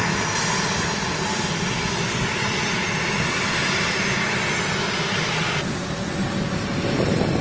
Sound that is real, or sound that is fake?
real